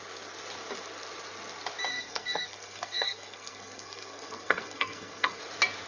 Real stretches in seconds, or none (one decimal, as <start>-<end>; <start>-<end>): 0.0-1.9; 5.4-5.9